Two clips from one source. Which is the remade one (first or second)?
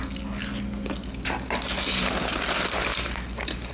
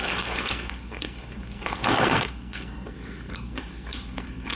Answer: second